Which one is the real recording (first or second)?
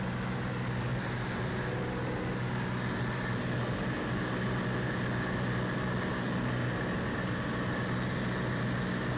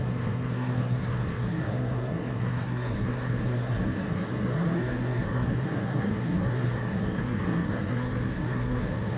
first